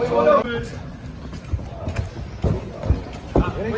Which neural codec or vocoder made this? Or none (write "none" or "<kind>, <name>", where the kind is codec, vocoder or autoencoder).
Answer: none